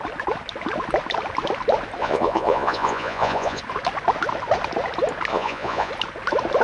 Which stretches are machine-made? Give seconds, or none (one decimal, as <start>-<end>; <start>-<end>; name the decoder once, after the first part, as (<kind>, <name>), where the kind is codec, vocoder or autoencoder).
2.0-3.6 (vocoder, Vocos); 5.3-5.9